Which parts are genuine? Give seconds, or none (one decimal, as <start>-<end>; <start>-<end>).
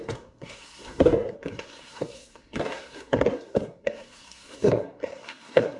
none